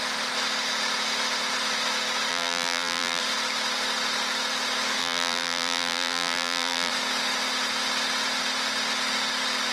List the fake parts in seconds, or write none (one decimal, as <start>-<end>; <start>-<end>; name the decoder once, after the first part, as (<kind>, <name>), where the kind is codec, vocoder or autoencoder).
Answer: 2.3-3.2 (vocoder, BigVGAN v2); 5.0-6.9